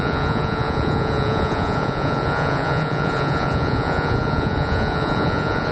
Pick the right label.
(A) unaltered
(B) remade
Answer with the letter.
B